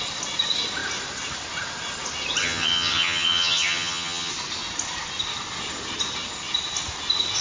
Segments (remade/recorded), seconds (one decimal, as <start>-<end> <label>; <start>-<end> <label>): 0.0-2.4 recorded; 2.4-4.3 remade; 4.3-7.4 recorded